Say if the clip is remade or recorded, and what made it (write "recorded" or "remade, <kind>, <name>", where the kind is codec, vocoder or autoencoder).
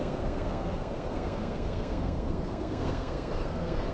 remade, codec, SNAC